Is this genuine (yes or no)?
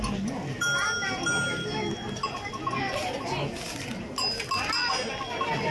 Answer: yes